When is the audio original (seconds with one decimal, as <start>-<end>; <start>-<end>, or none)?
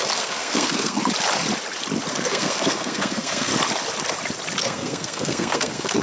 1.0-2.1; 3.5-4.6